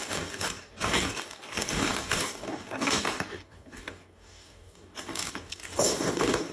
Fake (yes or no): yes